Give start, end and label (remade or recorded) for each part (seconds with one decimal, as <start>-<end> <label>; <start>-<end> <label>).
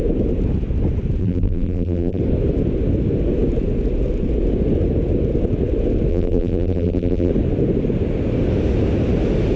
0.0-1.2 recorded; 1.2-2.2 remade; 2.2-6.1 recorded; 6.1-7.3 remade; 7.3-9.6 recorded